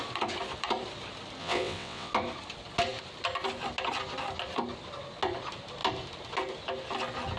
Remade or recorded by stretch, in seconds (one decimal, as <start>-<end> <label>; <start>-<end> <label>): 0.0-1.4 recorded; 1.4-2.1 remade; 2.1-7.4 recorded